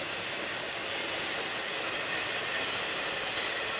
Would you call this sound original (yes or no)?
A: yes